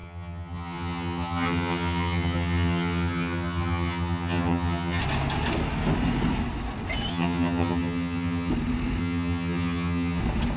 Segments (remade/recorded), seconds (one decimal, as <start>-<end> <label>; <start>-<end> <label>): 0.0-5.0 remade; 5.0-7.1 recorded; 7.1-8.5 remade; 8.5-9.0 recorded; 9.0-10.2 remade; 10.2-10.6 recorded